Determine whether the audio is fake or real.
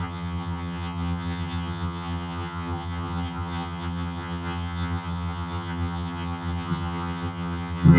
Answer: fake